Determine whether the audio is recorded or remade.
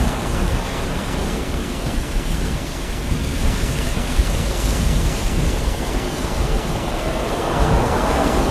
remade